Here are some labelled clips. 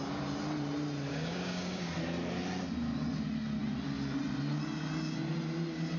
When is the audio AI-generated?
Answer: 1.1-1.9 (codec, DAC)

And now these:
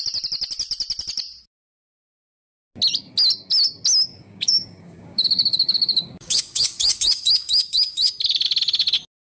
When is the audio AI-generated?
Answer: 4.1-8.1 (codec, DAC)

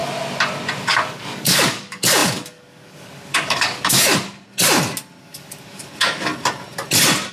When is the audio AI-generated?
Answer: 0.8-4.1 (codec, DAC); 5.2-6.3

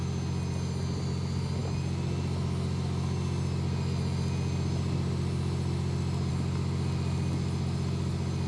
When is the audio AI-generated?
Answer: none

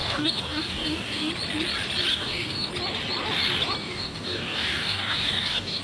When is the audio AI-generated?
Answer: 0.0-1.3 (codec, DAC); 2.1-2.7; 3.8-5.8

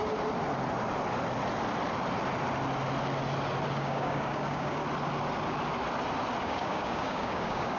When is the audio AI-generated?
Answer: 3.7-4.8 (codec, DAC); 6.4-7.8

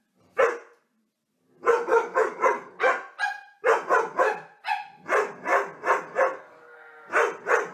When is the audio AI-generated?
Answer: 1.9-2.9 (codec, DAC)

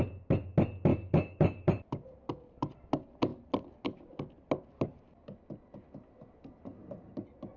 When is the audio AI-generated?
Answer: 0.9-1.7 (codec, DAC)